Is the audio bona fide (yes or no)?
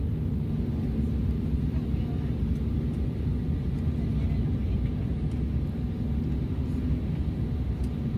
yes